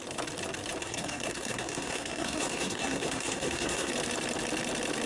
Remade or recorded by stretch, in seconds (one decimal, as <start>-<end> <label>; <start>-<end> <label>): 0.0-0.8 recorded; 0.8-3.9 remade; 3.9-5.1 recorded